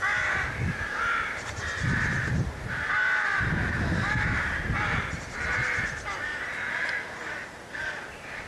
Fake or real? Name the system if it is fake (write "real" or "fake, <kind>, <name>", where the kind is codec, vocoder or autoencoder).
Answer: real